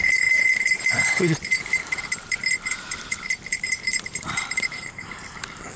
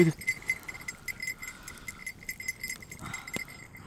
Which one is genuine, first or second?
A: second